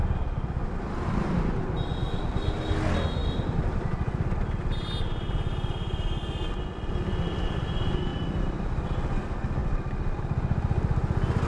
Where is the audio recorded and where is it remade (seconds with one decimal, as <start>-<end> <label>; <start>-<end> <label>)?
0.0-11.5 recorded

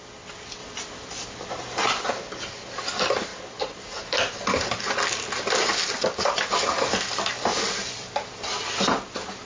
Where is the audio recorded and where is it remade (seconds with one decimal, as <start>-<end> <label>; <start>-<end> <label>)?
0.0-0.6 recorded; 0.6-1.8 remade; 1.8-9.5 recorded

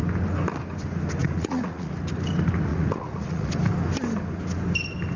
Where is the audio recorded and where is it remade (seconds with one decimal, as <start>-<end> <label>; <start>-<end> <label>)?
0.0-1.2 recorded; 1.2-1.9 remade; 1.9-2.7 recorded; 2.7-3.5 remade; 3.5-5.2 recorded

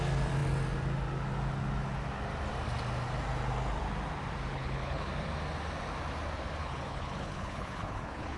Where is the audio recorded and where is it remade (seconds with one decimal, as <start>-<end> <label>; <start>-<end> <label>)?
0.0-4.5 recorded; 4.5-5.1 remade; 5.1-6.6 recorded; 6.6-8.4 remade

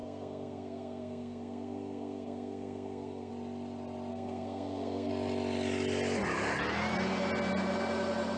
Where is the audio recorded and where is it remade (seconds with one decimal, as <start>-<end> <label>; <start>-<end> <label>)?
0.0-3.3 remade; 3.3-4.1 recorded; 4.1-5.1 remade; 5.1-8.4 recorded